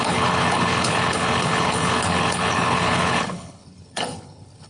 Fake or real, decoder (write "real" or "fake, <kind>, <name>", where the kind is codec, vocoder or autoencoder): fake, codec, HILCodec